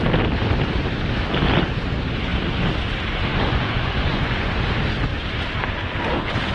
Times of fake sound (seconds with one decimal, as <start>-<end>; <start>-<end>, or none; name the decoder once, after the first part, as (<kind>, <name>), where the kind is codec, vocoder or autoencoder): 3.3-4.6 (vocoder, Vocos)